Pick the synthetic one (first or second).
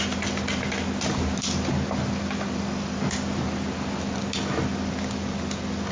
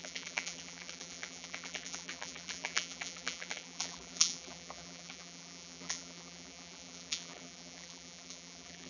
second